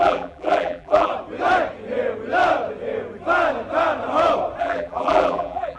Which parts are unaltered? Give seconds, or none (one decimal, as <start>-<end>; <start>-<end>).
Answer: 1.1-4.6